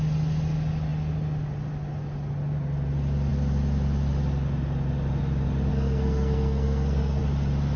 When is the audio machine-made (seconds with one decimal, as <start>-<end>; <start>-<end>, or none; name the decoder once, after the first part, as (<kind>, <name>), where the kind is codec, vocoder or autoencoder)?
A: 5.7-7.2 (codec, SNAC)